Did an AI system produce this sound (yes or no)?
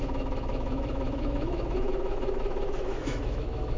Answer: yes